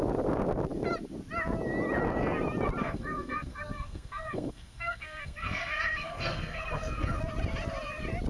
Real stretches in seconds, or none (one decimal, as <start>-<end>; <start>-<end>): 0.0-2.8; 7.2-8.3